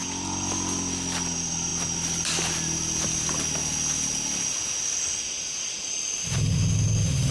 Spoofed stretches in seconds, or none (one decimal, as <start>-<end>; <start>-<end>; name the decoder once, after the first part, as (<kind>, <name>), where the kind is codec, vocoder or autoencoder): none